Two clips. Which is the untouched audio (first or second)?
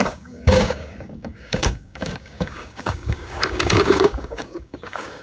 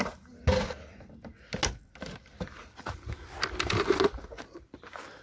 second